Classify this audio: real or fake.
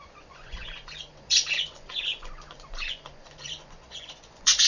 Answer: fake